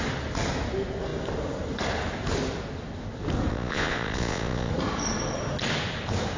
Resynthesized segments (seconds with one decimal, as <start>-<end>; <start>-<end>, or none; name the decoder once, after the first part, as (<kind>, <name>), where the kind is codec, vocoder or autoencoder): 3.5-4.7 (vocoder, Vocos)